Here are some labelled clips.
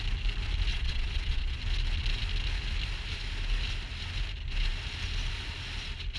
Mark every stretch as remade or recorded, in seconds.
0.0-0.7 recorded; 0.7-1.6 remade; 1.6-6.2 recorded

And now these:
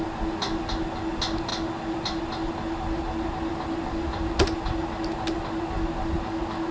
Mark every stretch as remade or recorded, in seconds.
0.0-6.7 recorded

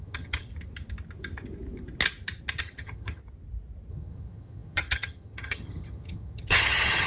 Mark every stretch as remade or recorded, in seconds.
0.0-0.5 remade; 0.5-2.6 recorded; 2.6-3.2 remade; 3.2-3.9 recorded; 3.9-7.1 remade

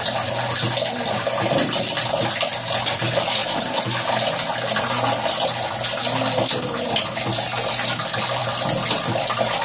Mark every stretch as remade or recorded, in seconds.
0.0-9.6 recorded